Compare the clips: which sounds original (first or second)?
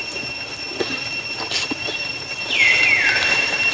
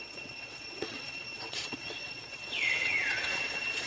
first